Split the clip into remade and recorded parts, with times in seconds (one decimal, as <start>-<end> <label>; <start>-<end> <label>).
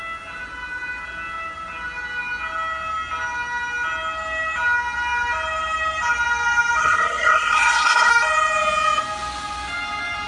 0.0-6.8 recorded; 6.8-8.1 remade; 8.1-10.3 recorded